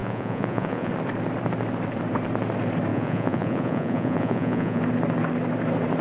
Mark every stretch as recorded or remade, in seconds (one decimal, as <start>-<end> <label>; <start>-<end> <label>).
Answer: 0.0-0.9 remade; 0.9-2.9 recorded; 2.9-4.8 remade; 4.8-6.0 recorded